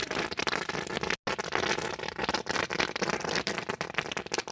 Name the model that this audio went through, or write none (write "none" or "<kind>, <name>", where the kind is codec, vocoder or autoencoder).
none